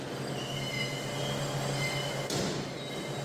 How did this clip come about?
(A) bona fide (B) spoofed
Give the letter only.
A